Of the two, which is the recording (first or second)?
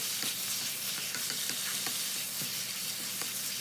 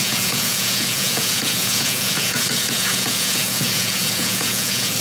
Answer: first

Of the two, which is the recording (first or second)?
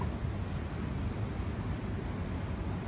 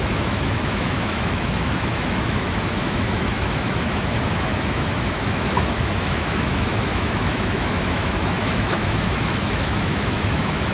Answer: first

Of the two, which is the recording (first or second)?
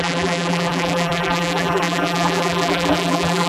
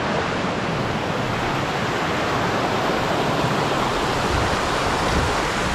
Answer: second